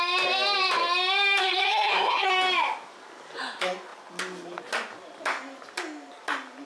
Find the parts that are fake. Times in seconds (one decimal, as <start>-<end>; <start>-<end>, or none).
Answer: 1.4-2.3